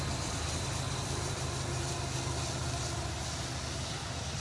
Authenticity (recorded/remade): recorded